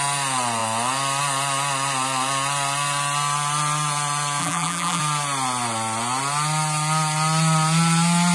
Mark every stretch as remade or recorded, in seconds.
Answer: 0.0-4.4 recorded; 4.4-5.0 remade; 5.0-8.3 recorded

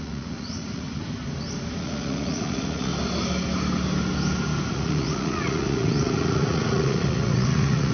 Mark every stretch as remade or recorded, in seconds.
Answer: 0.0-1.0 remade; 1.0-1.8 recorded; 1.8-2.9 remade; 2.9-4.7 recorded; 4.7-7.9 remade

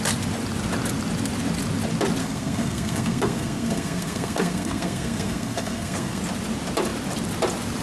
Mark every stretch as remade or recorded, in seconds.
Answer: 0.0-2.2 recorded; 2.2-6.2 remade; 6.2-7.8 recorded

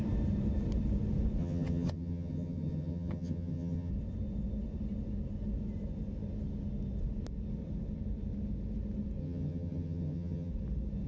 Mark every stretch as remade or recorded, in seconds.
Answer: 0.0-1.4 recorded; 1.4-3.9 remade; 3.9-9.2 recorded; 9.2-10.5 remade; 10.5-11.1 recorded

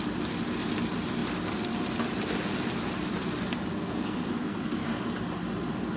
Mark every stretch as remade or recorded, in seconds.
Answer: 0.0-3.7 recorded; 3.7-4.9 remade; 4.9-6.0 recorded